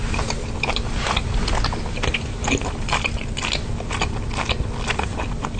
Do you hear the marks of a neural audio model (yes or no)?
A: no